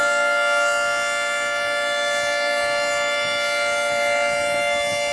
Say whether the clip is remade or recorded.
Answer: recorded